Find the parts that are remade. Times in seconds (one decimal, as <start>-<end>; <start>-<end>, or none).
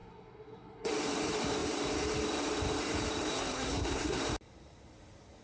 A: 0.0-0.9; 3.3-4.2